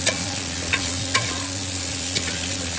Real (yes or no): no